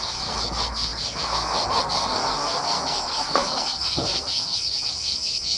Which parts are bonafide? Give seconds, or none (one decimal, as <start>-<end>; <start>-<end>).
none